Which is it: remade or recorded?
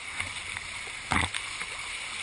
recorded